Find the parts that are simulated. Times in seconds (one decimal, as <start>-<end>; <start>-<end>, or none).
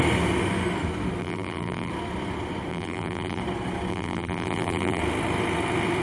1.2-1.9; 2.7-3.4; 3.9-5.0